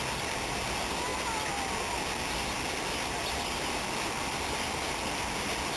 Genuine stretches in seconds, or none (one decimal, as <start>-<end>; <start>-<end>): 0.0-5.8